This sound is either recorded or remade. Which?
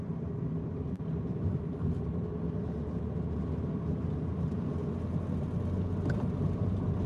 recorded